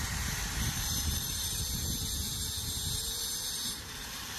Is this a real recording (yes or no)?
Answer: no